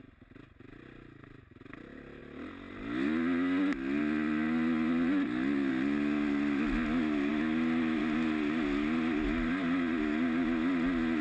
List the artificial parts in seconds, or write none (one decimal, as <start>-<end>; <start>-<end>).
none